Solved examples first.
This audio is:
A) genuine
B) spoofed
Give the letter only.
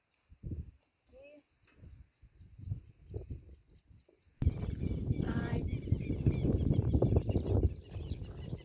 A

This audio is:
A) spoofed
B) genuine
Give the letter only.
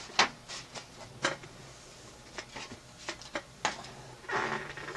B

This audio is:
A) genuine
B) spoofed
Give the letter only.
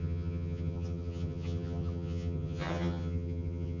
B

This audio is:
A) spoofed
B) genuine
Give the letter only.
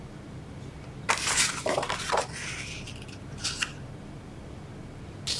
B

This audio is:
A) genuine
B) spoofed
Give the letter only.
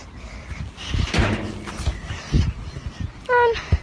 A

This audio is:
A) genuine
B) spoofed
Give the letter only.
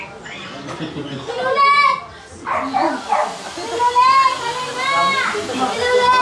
A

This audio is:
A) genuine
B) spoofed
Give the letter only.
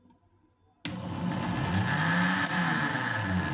A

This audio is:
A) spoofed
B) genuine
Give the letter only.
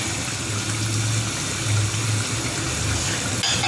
B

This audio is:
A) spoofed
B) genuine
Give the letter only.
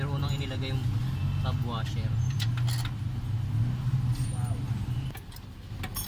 B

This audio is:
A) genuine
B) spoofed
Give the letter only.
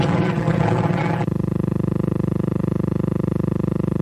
B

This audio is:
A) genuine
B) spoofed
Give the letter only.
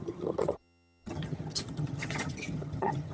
B